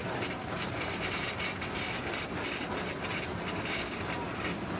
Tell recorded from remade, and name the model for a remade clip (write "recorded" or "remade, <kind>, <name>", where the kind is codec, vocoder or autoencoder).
recorded